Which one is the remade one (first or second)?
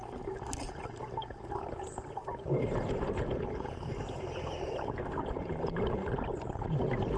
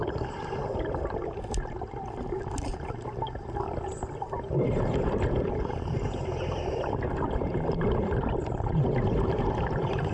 second